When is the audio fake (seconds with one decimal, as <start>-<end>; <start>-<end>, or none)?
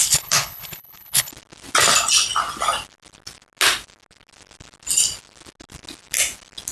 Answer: 0.0-1.3